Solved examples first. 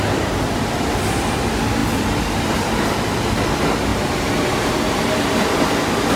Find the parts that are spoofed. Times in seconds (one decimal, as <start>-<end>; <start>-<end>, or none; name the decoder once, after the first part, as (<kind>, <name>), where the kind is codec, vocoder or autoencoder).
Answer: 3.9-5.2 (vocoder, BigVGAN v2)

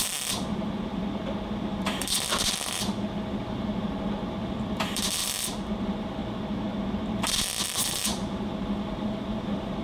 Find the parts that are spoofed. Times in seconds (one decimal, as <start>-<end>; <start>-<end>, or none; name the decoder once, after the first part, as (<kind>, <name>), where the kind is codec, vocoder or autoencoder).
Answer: 0.0-5.2 (vocoder, BigVGAN v2); 5.8-6.2; 7.2-9.8

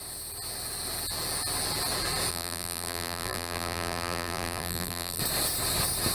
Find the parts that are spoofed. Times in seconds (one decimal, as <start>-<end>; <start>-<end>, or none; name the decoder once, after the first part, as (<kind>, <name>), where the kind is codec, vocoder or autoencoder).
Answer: 2.3-5.2 (vocoder, BigVGAN v2)